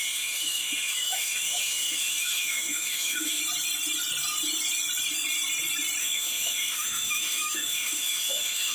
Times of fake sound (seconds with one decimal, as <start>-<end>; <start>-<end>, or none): 0.0-3.4; 6.0-8.7